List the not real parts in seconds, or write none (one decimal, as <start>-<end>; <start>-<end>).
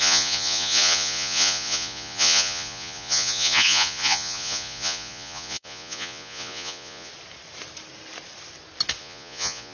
0.0-7.1; 9.0-9.7